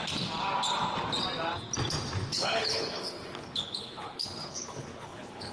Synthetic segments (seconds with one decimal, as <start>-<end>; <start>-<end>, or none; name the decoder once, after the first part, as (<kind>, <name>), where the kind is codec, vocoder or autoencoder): 2.3-5.5 (codec, HILCodec)